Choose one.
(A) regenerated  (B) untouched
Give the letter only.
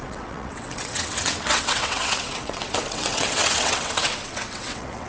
A